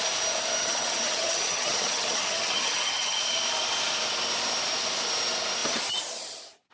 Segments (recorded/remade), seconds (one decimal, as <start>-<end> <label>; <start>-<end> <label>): 0.0-0.6 recorded; 0.6-3.2 remade; 3.2-6.7 recorded

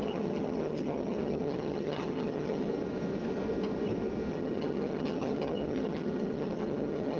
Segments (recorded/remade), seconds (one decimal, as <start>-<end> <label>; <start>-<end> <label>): 0.0-2.7 remade; 2.7-4.3 recorded; 4.3-7.2 remade